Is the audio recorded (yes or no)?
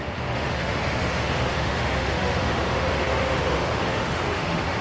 no